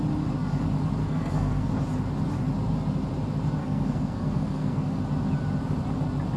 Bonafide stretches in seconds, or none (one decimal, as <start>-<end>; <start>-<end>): 0.0-1.0; 1.7-3.6; 5.0-6.4